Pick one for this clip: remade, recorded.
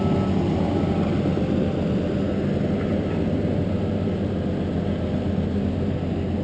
recorded